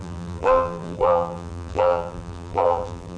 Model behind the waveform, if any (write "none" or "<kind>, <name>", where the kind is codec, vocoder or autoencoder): vocoder, BigVGAN v2